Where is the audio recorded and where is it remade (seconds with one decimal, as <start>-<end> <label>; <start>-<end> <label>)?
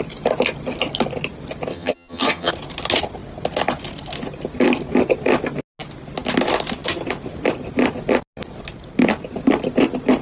0.0-1.7 recorded; 1.7-2.5 remade; 2.5-10.2 recorded